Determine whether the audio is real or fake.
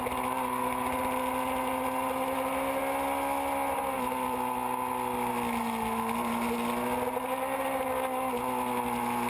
real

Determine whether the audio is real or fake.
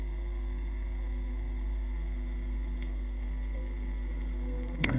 fake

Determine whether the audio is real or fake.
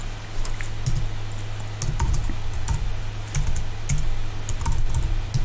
real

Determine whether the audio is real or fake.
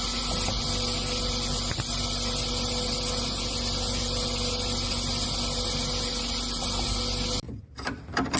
real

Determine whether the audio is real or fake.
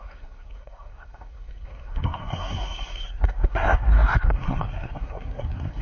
fake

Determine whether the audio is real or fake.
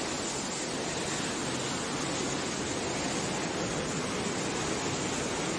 real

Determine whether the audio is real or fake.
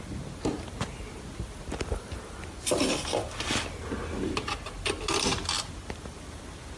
real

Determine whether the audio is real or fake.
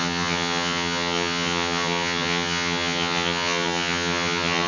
fake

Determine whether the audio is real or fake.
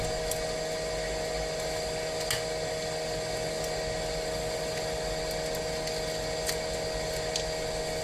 real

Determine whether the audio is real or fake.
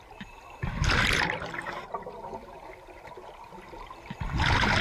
real